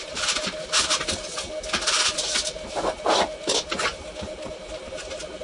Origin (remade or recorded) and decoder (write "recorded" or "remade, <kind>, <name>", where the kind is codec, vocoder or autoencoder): recorded